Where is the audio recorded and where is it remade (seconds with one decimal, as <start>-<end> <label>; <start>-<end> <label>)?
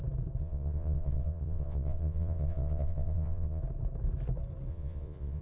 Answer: 0.0-0.4 recorded; 0.4-3.6 remade; 3.6-4.7 recorded; 4.7-5.4 remade